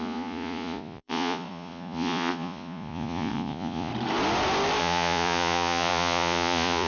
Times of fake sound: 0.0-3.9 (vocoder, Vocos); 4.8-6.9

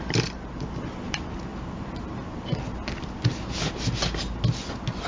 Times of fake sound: none